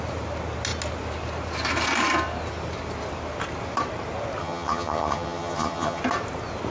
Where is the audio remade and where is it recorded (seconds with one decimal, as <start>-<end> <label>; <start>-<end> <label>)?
0.0-4.4 recorded; 4.4-6.0 remade; 6.0-6.7 recorded